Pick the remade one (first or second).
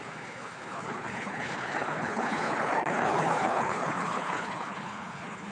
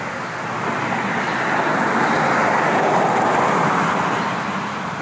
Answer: first